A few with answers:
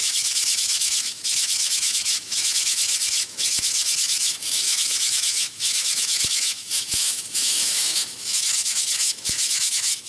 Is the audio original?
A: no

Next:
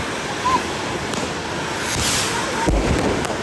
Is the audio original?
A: yes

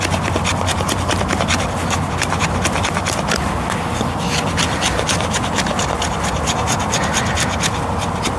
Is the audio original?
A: yes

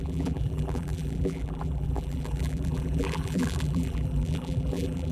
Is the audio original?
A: no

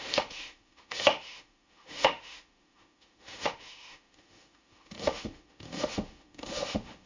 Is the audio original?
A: no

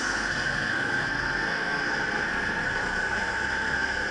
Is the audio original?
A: no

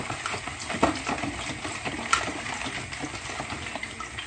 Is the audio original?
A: yes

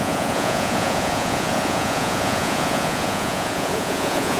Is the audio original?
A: no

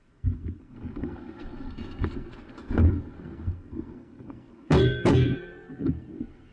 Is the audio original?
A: no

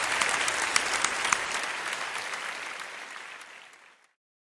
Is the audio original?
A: no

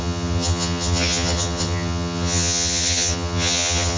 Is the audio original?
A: no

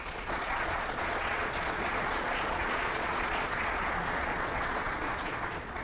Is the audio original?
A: no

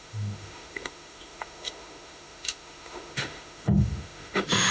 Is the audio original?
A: no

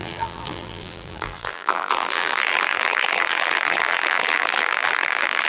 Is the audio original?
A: no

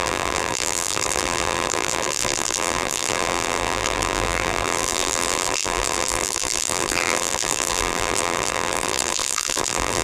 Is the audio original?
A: no